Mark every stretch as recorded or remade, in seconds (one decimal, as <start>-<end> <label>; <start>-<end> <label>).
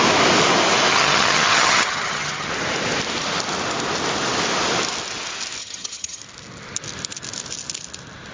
0.0-0.9 recorded; 0.9-2.5 remade; 2.5-5.6 recorded; 5.6-6.2 remade; 6.2-8.3 recorded